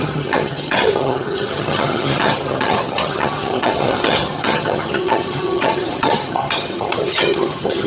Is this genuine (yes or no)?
no